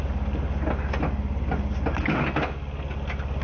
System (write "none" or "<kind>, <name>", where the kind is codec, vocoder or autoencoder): none